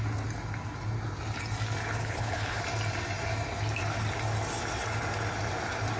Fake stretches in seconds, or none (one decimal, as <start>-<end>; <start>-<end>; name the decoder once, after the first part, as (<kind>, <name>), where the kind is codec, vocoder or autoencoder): 2.0-2.6 (codec, HILCodec)